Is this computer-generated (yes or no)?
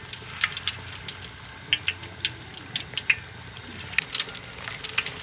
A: no